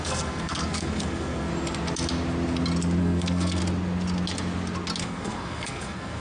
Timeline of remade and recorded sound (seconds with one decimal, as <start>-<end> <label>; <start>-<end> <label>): 0.0-1.5 remade; 1.5-3.0 recorded; 3.0-3.6 remade; 3.6-5.0 recorded; 5.0-6.2 remade